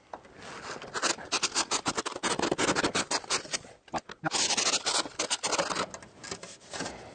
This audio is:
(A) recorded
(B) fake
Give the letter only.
A